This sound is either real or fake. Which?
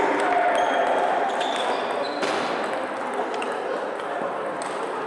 real